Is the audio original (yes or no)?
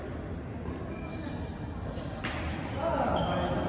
yes